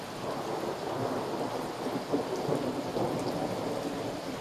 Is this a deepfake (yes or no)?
no